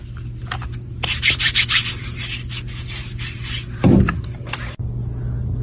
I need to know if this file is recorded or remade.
recorded